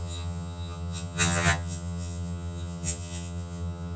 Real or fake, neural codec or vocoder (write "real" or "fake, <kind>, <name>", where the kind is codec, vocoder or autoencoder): fake, vocoder, HiFi-GAN